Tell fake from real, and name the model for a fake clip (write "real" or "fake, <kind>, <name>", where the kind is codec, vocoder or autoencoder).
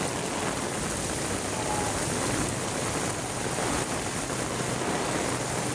real